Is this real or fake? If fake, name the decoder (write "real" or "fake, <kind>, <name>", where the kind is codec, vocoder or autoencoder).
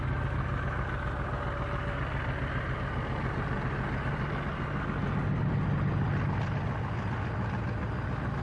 real